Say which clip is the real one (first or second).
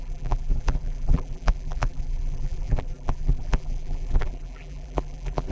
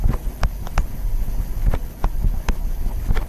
second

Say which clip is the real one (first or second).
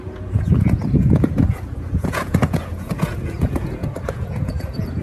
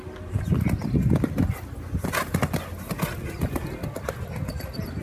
second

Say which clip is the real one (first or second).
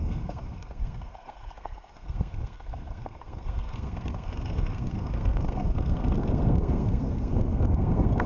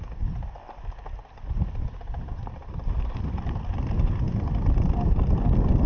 second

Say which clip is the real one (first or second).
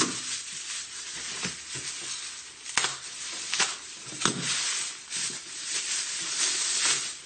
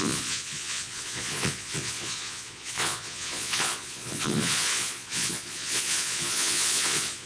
first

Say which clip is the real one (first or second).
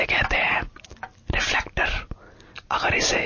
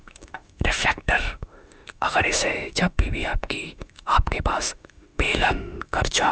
first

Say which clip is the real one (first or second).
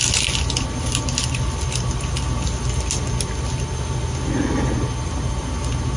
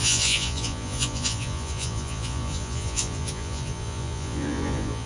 first